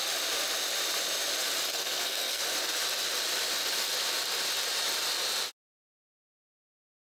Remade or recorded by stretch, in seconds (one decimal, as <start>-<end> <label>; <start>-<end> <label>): 0.0-1.7 recorded; 1.7-2.4 remade; 2.4-7.0 recorded